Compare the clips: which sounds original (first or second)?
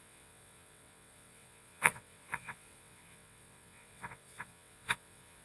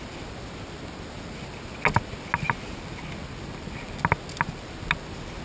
second